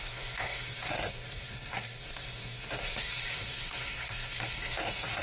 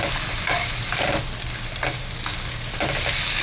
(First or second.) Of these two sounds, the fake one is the first